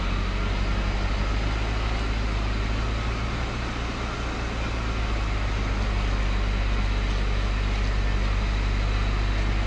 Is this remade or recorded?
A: recorded